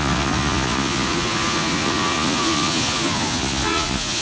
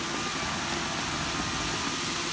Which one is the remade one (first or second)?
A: first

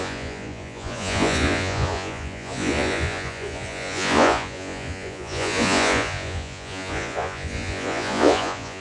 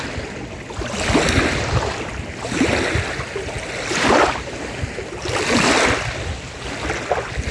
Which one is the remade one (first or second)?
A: first